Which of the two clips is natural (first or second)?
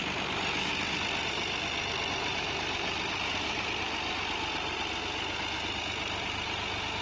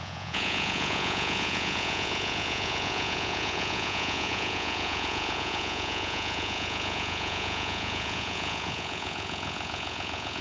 first